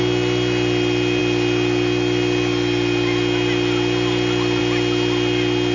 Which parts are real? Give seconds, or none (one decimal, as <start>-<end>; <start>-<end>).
0.0-5.7